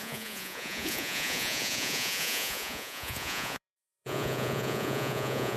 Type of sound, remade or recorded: remade